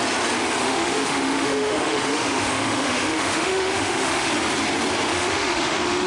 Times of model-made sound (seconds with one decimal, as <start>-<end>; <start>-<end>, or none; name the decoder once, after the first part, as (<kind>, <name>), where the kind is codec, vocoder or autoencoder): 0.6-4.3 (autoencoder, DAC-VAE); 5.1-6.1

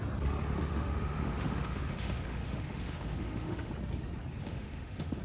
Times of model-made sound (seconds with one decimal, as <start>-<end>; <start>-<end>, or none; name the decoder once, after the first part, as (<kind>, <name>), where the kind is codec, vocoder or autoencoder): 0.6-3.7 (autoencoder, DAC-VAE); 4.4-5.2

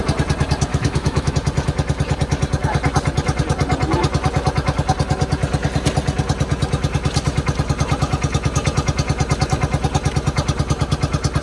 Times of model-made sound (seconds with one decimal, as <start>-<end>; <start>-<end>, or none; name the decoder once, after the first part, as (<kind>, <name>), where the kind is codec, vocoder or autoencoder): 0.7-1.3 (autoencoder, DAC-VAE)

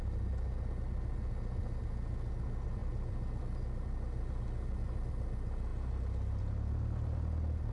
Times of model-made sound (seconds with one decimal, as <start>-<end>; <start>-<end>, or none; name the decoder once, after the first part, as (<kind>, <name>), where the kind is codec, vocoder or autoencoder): none

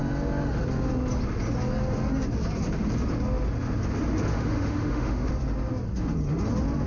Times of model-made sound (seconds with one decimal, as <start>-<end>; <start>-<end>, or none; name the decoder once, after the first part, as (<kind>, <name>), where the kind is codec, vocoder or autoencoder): 4.3-5.3 (autoencoder, DAC-VAE)

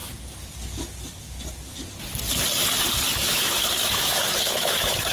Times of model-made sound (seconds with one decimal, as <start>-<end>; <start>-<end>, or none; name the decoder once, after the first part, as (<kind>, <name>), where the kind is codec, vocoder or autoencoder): 3.1-5.1 (autoencoder, DAC-VAE)

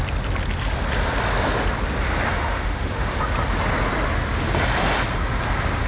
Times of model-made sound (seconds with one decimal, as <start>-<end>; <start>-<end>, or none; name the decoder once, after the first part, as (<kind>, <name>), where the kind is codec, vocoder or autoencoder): 2.3-3.2 (autoencoder, DAC-VAE)

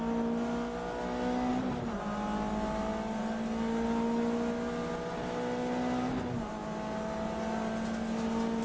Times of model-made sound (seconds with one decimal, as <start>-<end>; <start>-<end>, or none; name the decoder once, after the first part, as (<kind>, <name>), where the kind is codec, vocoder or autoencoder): none